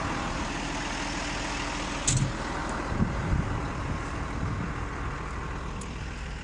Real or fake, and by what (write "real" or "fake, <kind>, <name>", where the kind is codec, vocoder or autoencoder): real